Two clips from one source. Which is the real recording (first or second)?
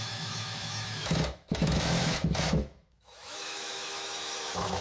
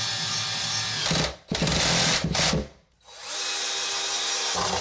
second